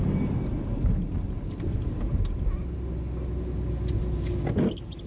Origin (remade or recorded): recorded